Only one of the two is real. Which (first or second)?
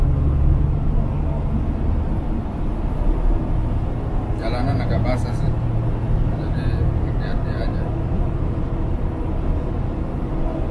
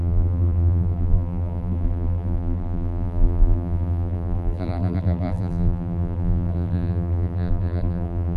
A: first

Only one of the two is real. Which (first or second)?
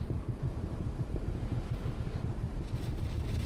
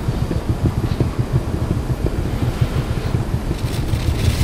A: second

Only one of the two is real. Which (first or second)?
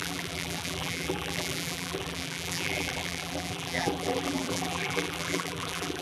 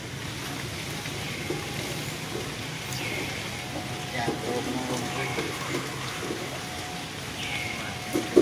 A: second